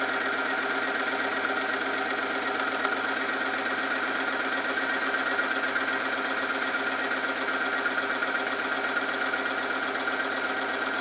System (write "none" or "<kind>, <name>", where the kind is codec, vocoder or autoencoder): none